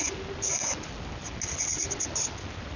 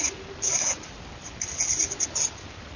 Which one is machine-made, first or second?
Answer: second